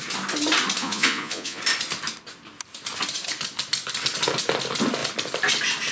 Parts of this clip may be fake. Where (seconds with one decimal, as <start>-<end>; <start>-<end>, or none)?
0.8-1.6